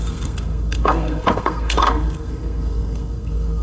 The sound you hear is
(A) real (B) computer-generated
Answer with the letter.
B